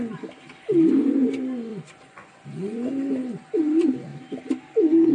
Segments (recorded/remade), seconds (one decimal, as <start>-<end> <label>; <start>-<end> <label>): 0.0-1.7 recorded; 1.7-2.9 remade; 2.9-5.1 recorded